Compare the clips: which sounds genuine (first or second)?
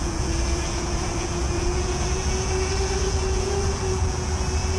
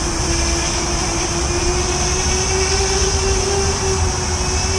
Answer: second